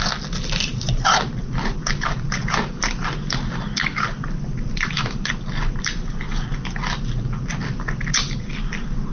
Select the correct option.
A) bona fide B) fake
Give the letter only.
A